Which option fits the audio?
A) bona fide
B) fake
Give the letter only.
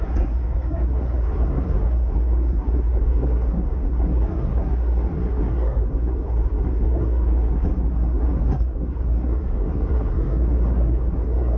B